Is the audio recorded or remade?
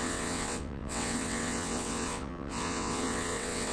remade